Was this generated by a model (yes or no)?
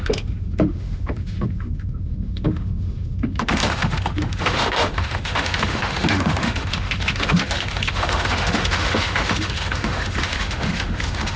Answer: yes